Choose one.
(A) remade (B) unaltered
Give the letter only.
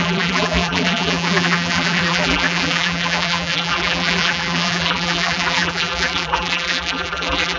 A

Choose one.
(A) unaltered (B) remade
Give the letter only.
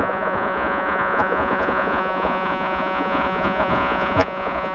B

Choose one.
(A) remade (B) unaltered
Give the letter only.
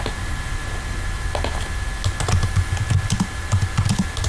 B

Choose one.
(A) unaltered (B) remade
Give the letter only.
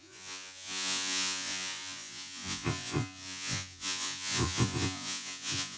B